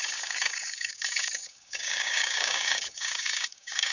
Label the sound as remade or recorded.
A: remade